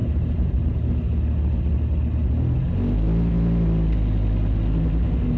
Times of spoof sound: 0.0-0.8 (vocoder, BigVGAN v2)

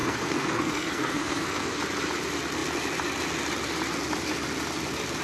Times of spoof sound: 0.0-1.8 (codec, SNAC)

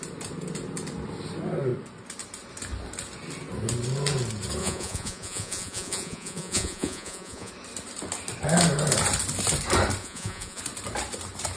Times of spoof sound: 4.6-7.5 (vocoder, Vocos); 10.0-10.6

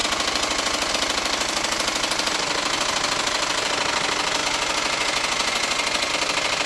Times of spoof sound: 0.0-0.9 (vocoder, Vocos); 4.4-6.1

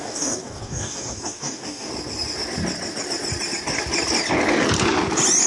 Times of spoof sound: 0.0-1.9 (codec, DAC)

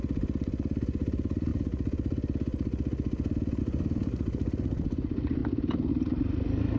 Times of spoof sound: none